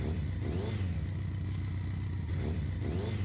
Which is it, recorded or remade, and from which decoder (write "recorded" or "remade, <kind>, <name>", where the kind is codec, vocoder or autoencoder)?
recorded